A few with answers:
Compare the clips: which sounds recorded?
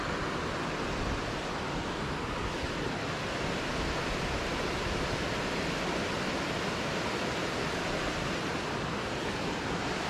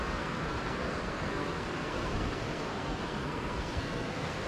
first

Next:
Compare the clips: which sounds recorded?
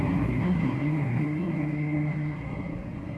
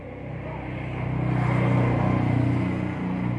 second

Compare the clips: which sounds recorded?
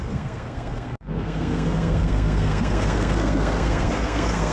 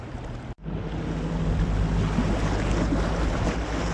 second